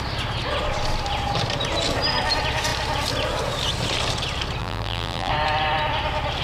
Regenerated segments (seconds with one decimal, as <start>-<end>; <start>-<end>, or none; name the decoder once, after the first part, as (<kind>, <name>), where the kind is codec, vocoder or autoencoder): 4.6-5.3 (vocoder, BigVGAN v2)